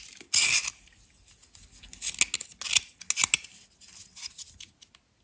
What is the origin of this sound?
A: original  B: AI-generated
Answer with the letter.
A